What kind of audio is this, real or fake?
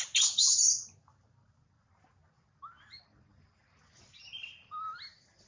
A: real